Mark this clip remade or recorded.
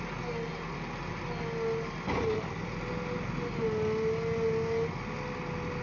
recorded